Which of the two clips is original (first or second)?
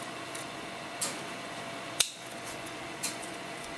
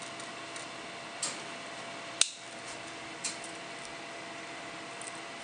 second